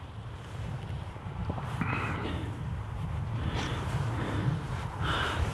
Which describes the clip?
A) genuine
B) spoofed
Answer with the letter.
B